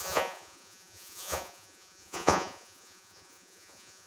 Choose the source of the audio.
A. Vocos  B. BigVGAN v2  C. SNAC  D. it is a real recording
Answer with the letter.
A